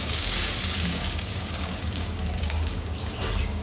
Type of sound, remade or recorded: remade